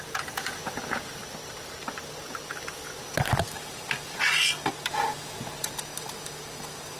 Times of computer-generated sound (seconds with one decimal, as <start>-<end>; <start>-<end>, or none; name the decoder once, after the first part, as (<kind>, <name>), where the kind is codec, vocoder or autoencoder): 0.0-1.2 (vocoder, Vocos); 4.9-5.9